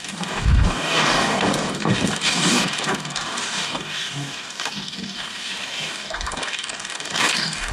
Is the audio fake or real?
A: fake